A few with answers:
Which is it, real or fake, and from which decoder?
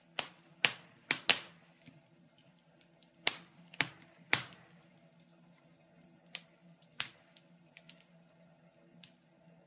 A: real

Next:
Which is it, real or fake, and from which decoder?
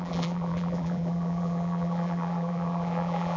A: fake, vocoder, BigVGAN v2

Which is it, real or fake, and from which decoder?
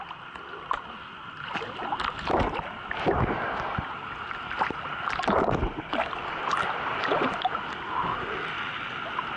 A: real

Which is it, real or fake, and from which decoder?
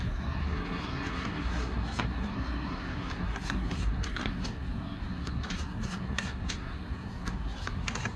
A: fake, codec, SNAC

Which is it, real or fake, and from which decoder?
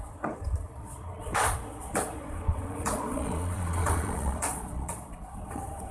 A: fake, vocoder, Vocos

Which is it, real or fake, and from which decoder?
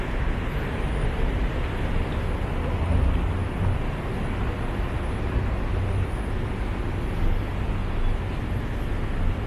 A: real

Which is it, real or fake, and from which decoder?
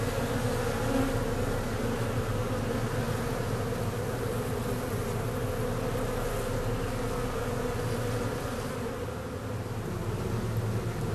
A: real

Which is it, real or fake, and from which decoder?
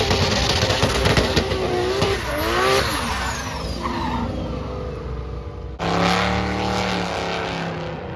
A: real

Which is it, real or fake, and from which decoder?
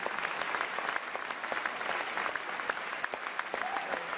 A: real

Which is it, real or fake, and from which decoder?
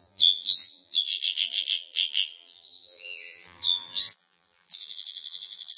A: fake, vocoder, BigVGAN v2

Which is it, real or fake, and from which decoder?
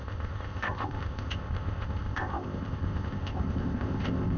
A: fake, codec, ZipCodec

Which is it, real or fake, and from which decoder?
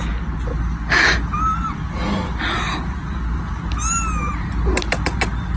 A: real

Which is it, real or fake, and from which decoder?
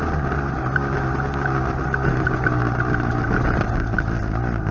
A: real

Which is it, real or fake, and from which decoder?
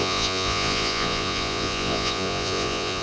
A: fake, vocoder, Vocos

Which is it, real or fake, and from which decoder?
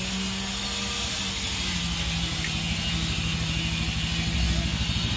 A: real